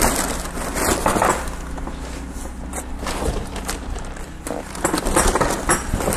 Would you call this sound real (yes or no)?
yes